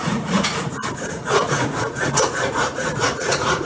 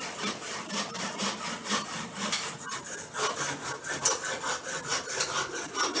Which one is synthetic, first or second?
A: first